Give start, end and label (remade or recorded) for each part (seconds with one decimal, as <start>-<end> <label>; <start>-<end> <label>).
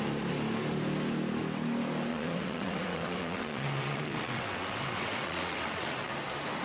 0.0-2.1 recorded; 2.1-6.1 remade; 6.1-6.6 recorded